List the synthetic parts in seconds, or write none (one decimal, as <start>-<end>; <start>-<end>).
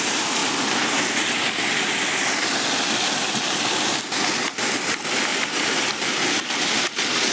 none